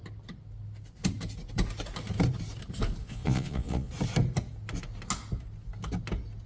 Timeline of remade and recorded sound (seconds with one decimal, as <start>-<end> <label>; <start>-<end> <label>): 0.0-3.0 recorded; 3.0-3.9 remade; 3.9-6.5 recorded